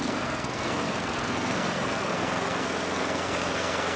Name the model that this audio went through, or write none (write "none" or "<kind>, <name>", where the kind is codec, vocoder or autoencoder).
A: codec, SNAC